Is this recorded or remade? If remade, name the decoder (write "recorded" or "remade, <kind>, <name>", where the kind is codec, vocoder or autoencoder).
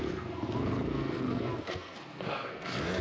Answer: remade, codec, SNAC